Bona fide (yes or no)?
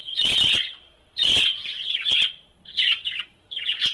no